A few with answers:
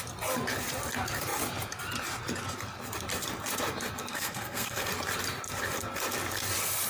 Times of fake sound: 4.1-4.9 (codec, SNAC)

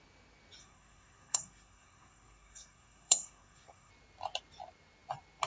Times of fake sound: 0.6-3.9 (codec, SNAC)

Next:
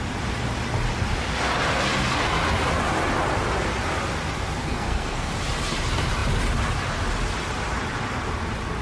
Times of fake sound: 4.6-5.3 (codec, SNAC)

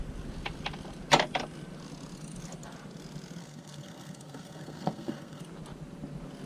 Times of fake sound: 3.4-5.4 (codec, SNAC)

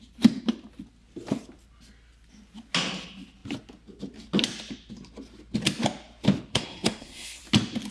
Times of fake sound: 6.5-7.4 (codec, SNAC)

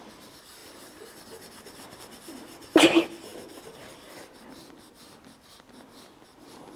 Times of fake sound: none